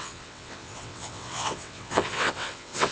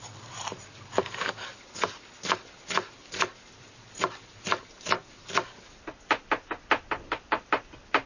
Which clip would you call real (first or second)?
second